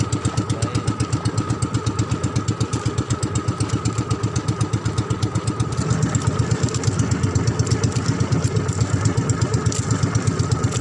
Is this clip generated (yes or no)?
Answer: no